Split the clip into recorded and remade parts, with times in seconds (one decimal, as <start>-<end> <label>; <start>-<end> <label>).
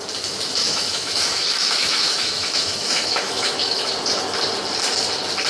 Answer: 0.0-0.6 recorded; 0.6-3.9 remade; 3.9-5.5 recorded